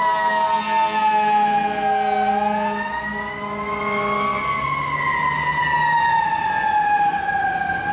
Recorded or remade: recorded